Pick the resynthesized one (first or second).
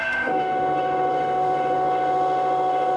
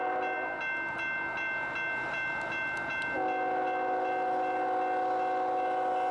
first